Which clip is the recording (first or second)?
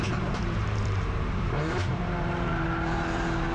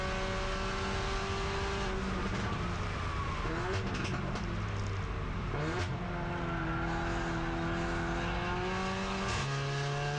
second